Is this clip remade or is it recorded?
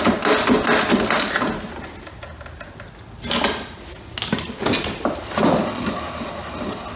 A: recorded